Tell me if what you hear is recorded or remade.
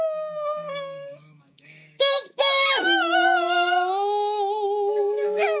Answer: remade